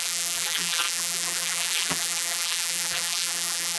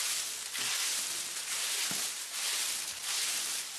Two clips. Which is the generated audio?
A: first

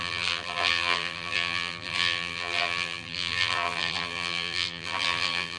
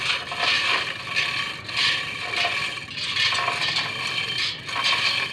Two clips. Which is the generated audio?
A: first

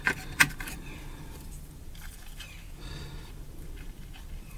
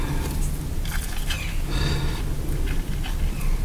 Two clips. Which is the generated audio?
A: first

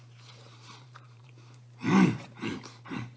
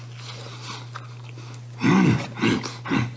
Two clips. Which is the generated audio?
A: first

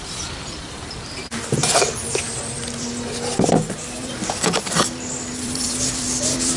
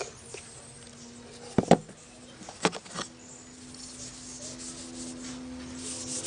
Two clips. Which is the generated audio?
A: first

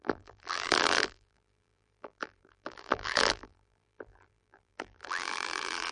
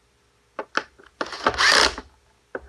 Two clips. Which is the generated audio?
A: first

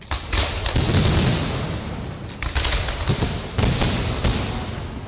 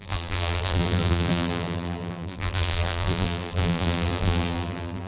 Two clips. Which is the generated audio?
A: second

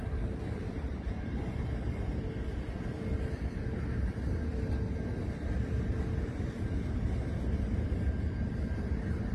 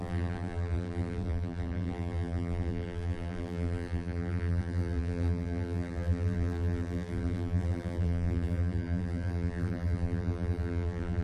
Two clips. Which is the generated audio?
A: second